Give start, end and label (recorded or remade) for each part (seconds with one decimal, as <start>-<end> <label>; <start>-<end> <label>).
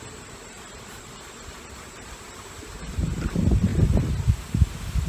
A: 0.0-3.7 remade; 3.7-4.3 recorded; 4.3-5.1 remade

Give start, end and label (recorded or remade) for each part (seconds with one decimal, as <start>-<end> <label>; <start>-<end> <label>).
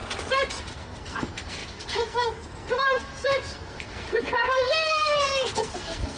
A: 0.0-0.6 recorded; 0.6-6.2 remade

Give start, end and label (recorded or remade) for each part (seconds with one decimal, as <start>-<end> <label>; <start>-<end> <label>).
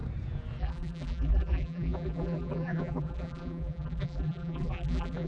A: 0.0-0.6 recorded; 0.6-5.3 remade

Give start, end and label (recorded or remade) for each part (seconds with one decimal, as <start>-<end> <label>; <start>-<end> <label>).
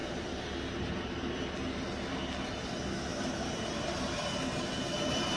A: 0.0-0.5 remade; 0.5-3.1 recorded; 3.1-4.8 remade; 4.8-5.4 recorded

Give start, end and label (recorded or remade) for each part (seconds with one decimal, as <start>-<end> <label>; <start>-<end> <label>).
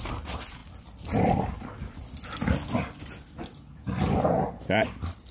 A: 0.0-5.3 recorded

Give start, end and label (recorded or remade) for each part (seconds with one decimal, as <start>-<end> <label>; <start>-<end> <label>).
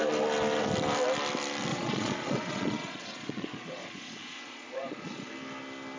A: 0.0-1.7 recorded; 1.7-5.3 remade; 5.3-6.0 recorded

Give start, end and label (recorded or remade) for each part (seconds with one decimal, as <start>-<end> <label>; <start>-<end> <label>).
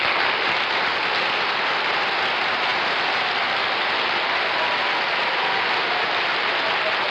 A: 0.0-7.1 recorded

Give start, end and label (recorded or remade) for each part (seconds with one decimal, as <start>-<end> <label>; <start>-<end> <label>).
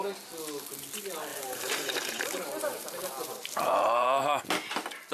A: 0.0-1.3 recorded; 1.3-4.4 remade; 4.4-5.1 recorded